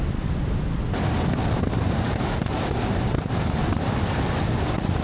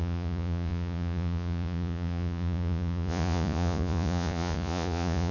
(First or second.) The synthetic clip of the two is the second